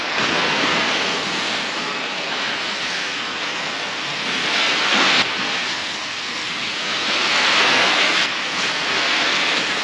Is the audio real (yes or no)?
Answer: no